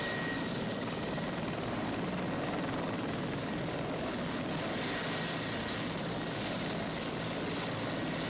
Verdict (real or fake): real